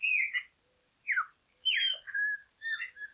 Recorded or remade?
recorded